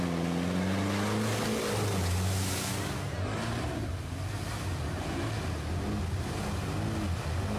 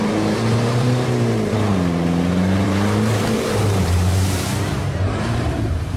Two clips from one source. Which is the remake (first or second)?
second